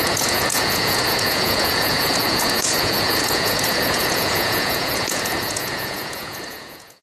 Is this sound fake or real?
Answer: fake